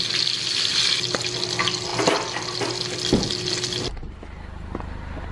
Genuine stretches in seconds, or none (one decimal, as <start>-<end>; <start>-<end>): 0.0-5.3

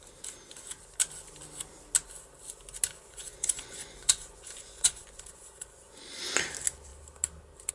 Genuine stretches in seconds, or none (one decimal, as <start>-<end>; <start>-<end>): 0.0-3.1; 6.2-7.7

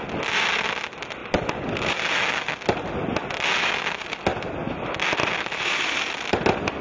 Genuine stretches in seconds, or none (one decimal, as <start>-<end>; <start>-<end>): 0.0-6.8

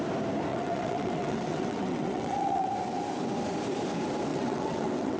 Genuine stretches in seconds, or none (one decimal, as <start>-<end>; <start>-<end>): 0.0-0.5; 2.7-4.3